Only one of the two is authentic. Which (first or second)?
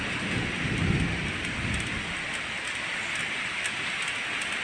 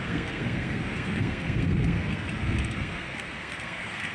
first